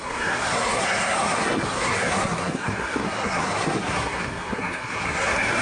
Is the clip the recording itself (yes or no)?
no